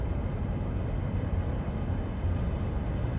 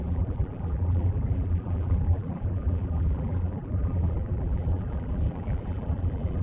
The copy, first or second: second